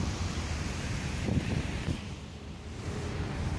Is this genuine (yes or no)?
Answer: no